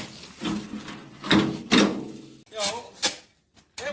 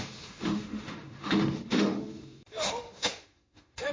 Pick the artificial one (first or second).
second